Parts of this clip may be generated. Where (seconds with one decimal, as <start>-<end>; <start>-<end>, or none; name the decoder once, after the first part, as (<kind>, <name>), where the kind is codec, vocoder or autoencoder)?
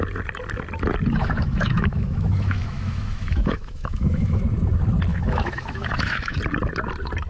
1.2-4.4 (autoencoder, DAC-VAE); 5.1-6.4